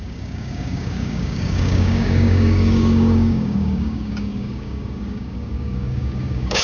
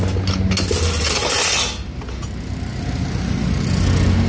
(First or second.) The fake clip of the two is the first